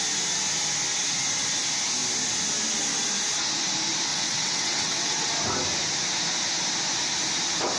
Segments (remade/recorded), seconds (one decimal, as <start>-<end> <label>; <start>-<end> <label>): 0.0-4.1 recorded; 4.1-5.3 remade; 5.3-7.8 recorded